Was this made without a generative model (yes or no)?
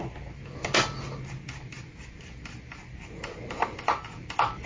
yes